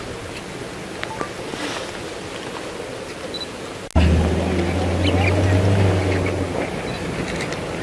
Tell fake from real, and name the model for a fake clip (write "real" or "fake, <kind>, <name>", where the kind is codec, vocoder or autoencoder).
real